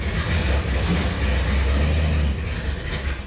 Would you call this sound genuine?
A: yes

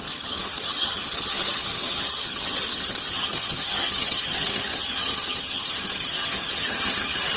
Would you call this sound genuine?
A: no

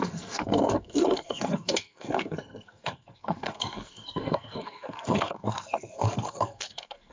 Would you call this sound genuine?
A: no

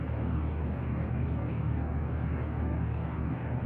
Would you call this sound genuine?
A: no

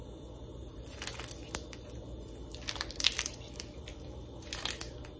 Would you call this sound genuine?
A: yes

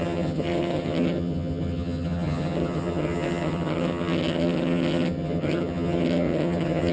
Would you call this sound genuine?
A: no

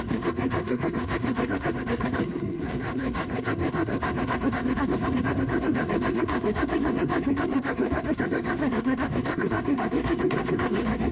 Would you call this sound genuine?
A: no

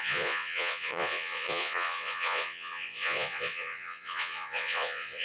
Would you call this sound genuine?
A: no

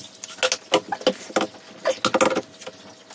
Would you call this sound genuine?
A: yes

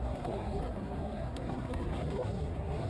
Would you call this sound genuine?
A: no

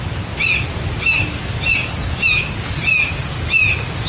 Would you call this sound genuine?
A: yes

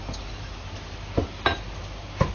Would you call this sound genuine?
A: yes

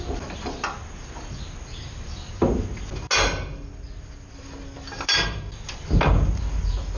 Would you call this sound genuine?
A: yes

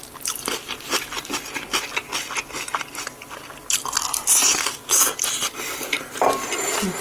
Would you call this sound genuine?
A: yes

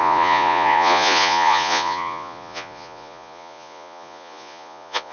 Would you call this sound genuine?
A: no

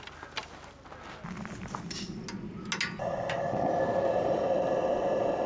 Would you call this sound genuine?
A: yes